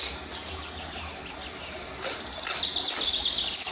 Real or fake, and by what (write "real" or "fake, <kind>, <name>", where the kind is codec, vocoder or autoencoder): real